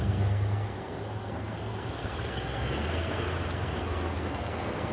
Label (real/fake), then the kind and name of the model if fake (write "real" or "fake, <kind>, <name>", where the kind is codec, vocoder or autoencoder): fake, codec, SNAC